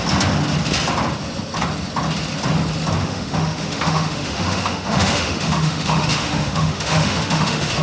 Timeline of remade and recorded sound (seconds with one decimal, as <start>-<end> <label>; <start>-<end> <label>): 0.0-3.0 recorded; 3.0-7.8 remade